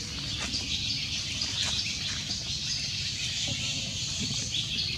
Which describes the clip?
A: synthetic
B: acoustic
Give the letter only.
B